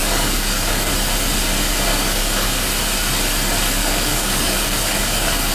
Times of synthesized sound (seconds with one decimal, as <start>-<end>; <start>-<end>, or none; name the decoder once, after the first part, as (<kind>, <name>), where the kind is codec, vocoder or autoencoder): 0.0-0.9 (codec, DAC); 1.9-2.7; 3.8-5.5